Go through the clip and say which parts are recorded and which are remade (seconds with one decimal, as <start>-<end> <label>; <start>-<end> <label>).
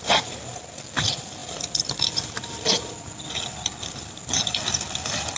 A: 0.0-5.4 recorded